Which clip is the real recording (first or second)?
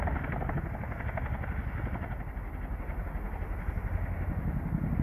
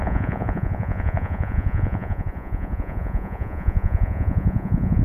first